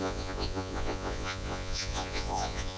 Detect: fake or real fake